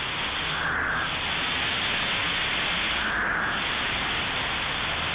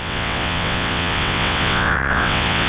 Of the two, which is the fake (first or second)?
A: second